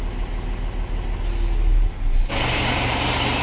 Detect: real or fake real